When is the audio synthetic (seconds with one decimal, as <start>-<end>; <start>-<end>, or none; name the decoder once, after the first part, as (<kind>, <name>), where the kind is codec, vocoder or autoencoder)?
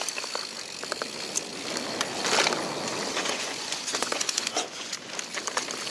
3.2-5.1 (vocoder, Vocos)